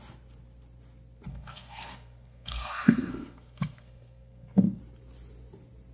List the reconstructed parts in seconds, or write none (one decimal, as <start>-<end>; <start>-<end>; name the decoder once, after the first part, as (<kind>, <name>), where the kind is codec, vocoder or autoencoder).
1.3-4.8 (codec, SNAC)